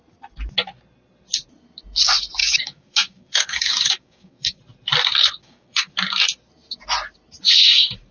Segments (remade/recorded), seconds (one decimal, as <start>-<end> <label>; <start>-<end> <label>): 0.0-2.4 recorded; 2.4-4.6 remade; 4.6-5.4 recorded; 5.4-5.9 remade; 5.9-8.1 recorded